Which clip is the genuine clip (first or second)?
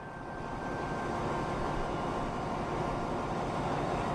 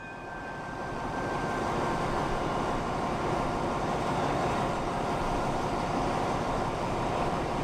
first